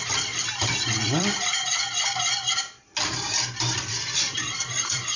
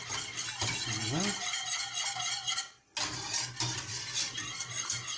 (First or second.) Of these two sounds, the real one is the second